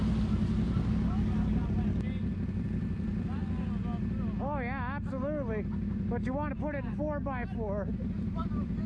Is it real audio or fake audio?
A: real